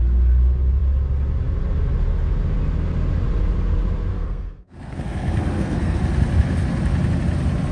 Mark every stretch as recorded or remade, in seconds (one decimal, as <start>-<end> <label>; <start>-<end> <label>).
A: 0.0-4.1 recorded; 4.1-6.0 remade; 6.0-7.7 recorded